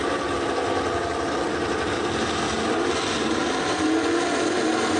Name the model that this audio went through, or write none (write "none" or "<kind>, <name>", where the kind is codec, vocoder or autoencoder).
none